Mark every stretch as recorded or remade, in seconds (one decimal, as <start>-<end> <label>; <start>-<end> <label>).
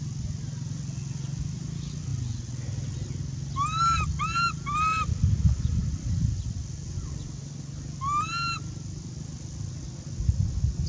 0.0-10.9 recorded